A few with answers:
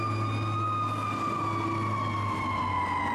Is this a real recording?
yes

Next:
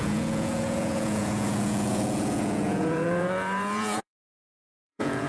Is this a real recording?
no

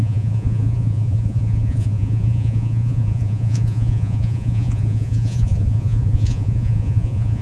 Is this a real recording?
no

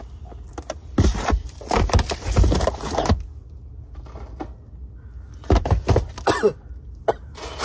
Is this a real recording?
yes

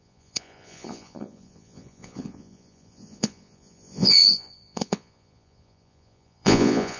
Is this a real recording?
no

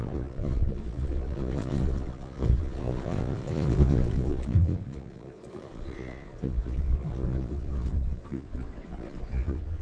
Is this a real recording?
no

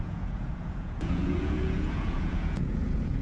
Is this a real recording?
no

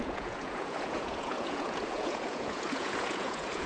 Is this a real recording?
no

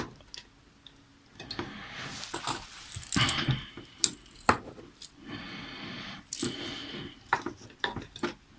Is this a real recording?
yes